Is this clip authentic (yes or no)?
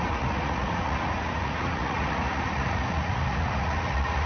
no